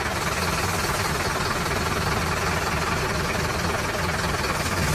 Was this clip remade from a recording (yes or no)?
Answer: no